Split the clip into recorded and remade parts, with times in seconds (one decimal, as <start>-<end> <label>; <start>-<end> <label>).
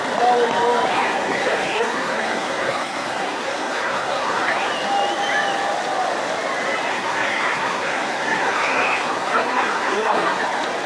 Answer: 0.0-0.9 recorded; 0.9-4.7 remade; 4.7-6.9 recorded; 6.9-10.4 remade; 10.4-10.9 recorded